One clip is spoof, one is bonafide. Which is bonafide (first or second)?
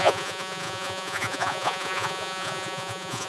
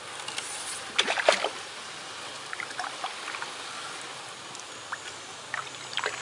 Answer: second